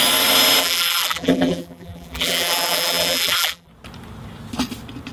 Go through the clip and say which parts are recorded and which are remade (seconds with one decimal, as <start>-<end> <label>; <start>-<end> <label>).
0.0-0.6 recorded; 0.6-3.7 remade; 3.7-5.1 recorded